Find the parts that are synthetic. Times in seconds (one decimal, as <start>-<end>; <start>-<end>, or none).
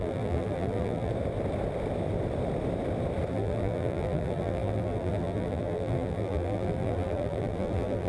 0.0-1.1; 3.3-8.1